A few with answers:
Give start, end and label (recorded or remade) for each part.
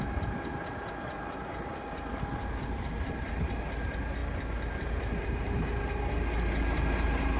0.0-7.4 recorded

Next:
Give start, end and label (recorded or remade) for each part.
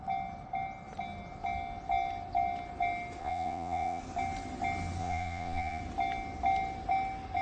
0.0-3.2 recorded; 3.2-4.0 remade; 4.0-5.0 recorded; 5.0-5.8 remade; 5.8-7.4 recorded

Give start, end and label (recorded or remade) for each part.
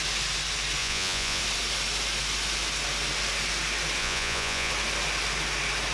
0.0-0.8 recorded; 0.8-1.4 remade; 1.4-4.0 recorded; 4.0-4.7 remade; 4.7-5.9 recorded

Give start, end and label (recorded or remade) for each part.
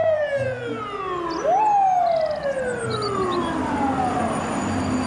0.0-0.8 remade; 0.8-5.1 recorded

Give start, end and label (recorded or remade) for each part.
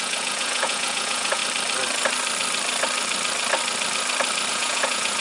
0.0-1.4 remade; 1.4-4.5 recorded; 4.5-5.2 remade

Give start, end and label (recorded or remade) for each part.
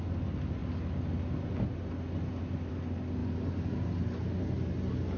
0.0-5.2 recorded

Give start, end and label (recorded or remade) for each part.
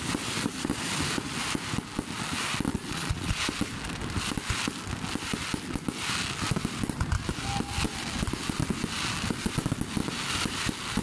0.0-2.7 recorded; 2.7-3.4 remade; 3.4-11.0 recorded